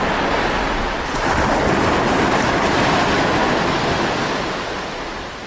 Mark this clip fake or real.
real